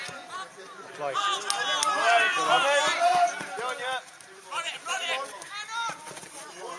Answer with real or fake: real